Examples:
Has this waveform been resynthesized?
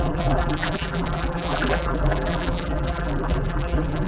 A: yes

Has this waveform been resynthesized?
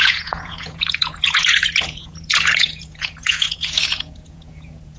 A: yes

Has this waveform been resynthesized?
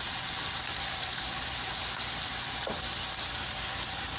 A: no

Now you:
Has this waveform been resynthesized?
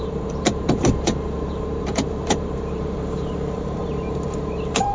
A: yes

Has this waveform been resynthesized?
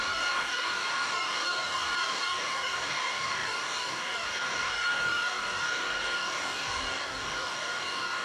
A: yes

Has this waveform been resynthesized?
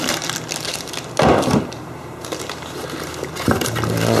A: no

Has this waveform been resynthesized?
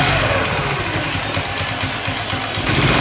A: no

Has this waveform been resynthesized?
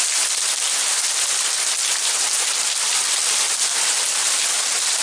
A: no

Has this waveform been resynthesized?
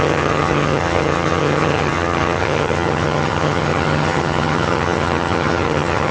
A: yes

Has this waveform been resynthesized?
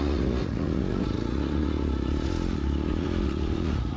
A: yes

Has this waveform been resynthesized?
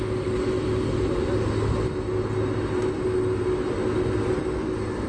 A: no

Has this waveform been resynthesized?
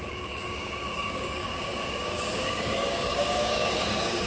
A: yes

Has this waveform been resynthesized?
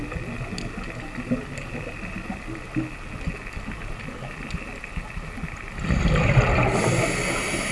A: no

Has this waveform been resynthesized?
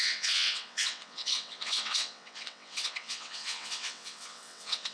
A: yes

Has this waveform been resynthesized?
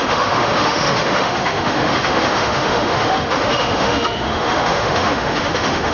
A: yes